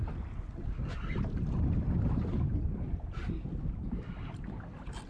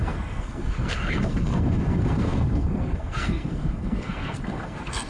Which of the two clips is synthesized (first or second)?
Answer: second